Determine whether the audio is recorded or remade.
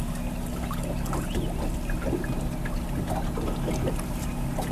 recorded